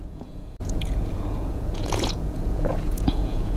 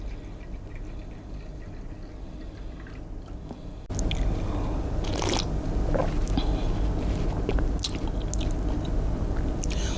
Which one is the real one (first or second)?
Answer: second